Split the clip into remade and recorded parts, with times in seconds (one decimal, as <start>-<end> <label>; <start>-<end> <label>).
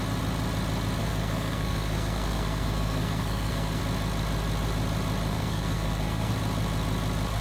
0.0-1.0 recorded; 1.0-3.8 remade; 3.8-5.3 recorded; 5.3-6.3 remade; 6.3-7.4 recorded